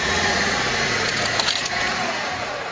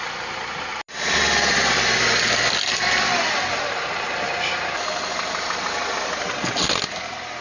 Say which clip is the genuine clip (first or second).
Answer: second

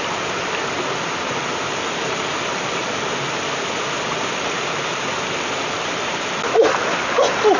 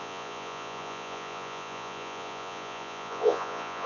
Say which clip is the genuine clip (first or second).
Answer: first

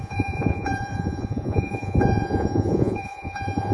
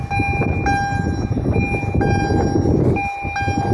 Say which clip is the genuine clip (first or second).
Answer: second